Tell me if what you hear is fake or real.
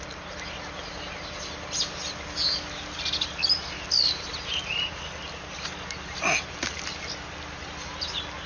real